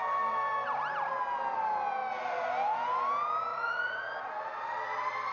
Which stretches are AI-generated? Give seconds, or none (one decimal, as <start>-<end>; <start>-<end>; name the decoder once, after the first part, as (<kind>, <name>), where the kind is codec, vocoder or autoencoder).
3.5-4.3 (vocoder, Vocos)